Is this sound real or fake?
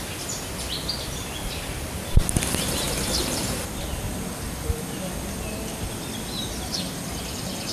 real